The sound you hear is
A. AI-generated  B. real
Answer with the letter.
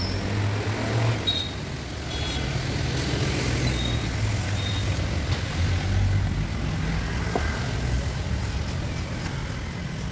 B